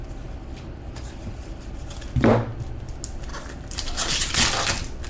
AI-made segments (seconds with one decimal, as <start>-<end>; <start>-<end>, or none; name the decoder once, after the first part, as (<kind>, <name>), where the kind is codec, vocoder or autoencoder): 3.3-4.3 (vocoder, BigVGAN v2)